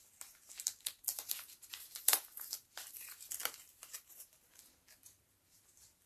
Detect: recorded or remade remade